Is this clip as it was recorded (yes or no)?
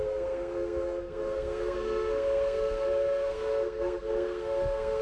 no